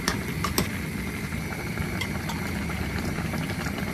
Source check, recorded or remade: recorded